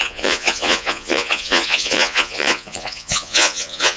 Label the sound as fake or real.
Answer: fake